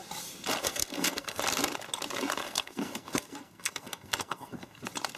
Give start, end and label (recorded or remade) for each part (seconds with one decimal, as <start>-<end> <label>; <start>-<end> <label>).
0.0-0.6 recorded; 0.6-1.4 remade; 1.4-2.4 recorded; 2.4-4.8 remade; 4.8-5.2 recorded